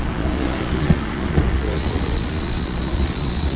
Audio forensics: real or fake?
fake